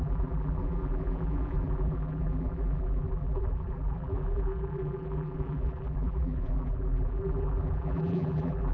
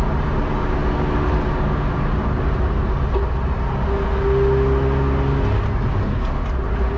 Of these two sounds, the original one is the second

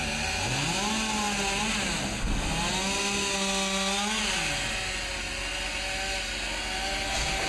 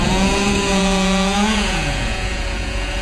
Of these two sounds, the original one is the first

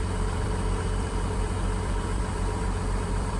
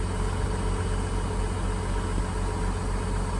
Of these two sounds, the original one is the second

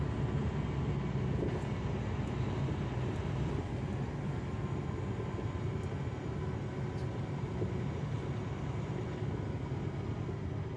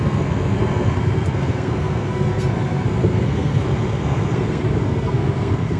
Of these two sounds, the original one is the first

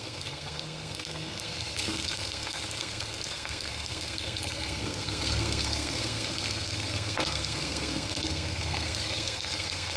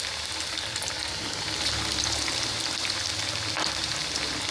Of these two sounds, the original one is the second